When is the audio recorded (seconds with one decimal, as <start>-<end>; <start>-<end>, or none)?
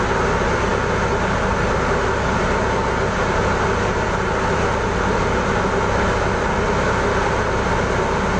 0.0-8.4